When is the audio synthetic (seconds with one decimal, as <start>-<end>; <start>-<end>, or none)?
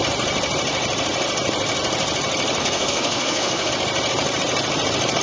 2.6-3.7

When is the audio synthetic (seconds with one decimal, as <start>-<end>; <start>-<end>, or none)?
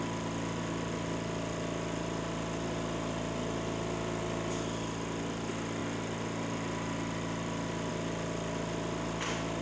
none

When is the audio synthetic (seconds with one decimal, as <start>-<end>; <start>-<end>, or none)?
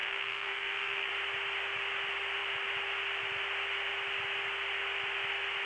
0.0-1.1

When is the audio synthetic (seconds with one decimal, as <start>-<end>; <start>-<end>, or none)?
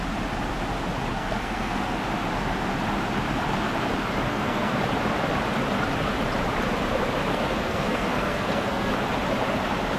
1.1-2.0; 4.3-4.8; 7.3-8.9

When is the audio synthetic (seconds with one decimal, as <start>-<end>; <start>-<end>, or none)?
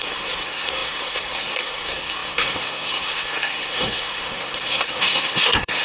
0.0-5.8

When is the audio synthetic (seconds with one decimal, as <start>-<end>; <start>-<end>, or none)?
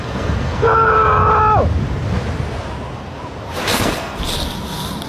0.0-1.3; 3.7-4.2